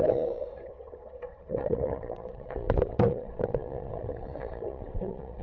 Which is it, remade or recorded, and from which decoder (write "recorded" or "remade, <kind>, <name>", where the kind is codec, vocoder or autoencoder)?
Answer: remade, vocoder, WaveNeXt